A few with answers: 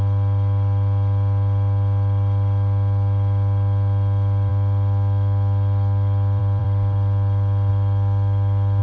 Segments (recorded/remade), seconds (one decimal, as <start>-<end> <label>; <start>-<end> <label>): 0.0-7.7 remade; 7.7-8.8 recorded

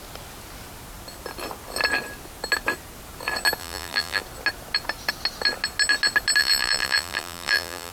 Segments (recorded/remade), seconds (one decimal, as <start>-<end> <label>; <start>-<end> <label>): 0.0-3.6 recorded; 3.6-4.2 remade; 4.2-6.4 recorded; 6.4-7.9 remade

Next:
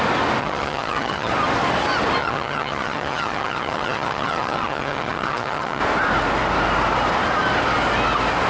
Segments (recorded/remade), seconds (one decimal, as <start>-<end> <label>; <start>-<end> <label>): 0.0-0.4 recorded; 0.4-1.3 remade; 1.3-2.2 recorded; 2.2-5.8 remade; 5.8-8.5 recorded

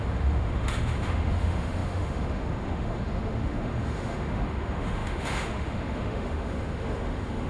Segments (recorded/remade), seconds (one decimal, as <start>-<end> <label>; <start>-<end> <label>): 0.0-7.5 remade

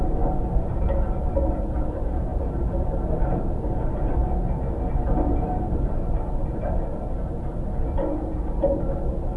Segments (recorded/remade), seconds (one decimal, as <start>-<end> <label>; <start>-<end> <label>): 0.0-4.2 remade; 4.2-4.9 recorded; 4.9-9.4 remade

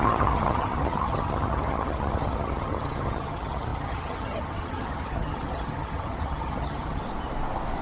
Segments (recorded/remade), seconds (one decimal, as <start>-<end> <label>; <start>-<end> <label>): 0.0-7.0 remade; 7.0-7.8 recorded

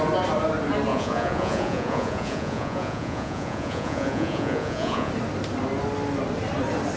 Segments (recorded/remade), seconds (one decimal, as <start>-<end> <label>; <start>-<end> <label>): 0.0-0.9 recorded; 0.9-5.1 remade; 5.1-7.0 recorded